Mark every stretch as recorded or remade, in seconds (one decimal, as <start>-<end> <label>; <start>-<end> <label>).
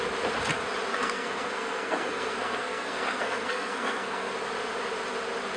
0.0-0.9 recorded; 0.9-4.3 remade; 4.3-5.6 recorded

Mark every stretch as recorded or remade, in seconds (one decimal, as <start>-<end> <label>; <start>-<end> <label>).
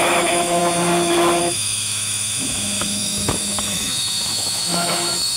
0.0-0.6 remade; 0.6-1.4 recorded; 1.4-5.4 remade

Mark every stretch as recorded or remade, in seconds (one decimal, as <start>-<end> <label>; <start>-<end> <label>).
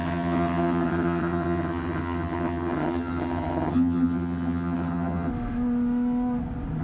0.0-5.3 remade; 5.3-6.8 recorded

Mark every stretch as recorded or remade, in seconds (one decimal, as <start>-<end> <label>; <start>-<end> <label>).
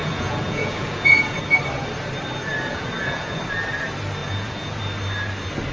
0.0-1.4 remade; 1.4-2.7 recorded; 2.7-3.4 remade; 3.4-4.2 recorded; 4.2-4.8 remade; 4.8-5.7 recorded